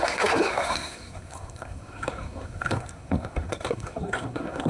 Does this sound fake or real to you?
fake